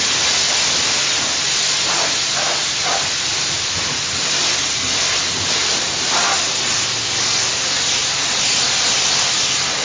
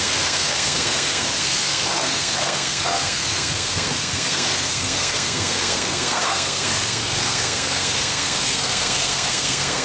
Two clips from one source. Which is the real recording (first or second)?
first